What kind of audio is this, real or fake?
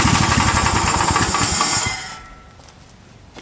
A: real